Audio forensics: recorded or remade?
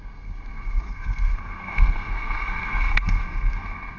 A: remade